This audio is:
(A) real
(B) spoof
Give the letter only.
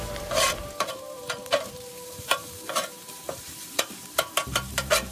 B